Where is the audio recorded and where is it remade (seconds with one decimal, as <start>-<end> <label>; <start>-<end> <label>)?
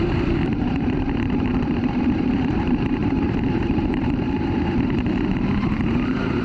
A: 0.0-1.5 remade; 1.5-2.0 recorded; 2.0-6.4 remade